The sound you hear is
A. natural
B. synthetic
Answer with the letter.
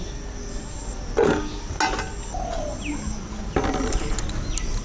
A